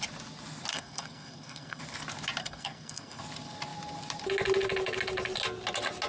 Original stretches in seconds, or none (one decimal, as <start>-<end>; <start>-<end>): 0.0-0.7; 1.8-2.4; 3.2-6.1